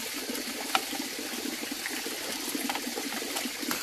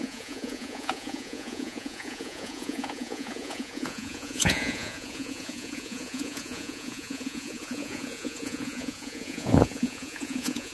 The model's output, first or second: second